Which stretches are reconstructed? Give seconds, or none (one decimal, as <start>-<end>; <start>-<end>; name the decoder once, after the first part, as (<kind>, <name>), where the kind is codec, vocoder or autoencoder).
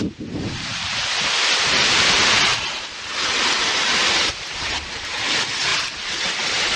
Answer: none